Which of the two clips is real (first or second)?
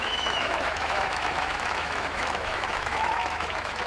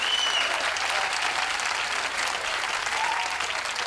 second